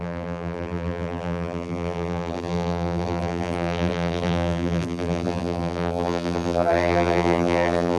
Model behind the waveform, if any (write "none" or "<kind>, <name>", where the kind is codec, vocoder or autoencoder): vocoder, BigVGAN v2